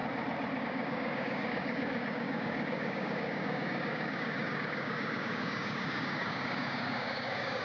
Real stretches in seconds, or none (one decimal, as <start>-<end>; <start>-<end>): 0.0-0.6